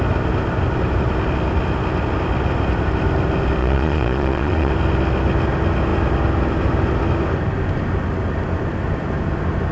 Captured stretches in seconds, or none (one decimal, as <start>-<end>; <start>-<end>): 0.0-3.6; 4.7-9.7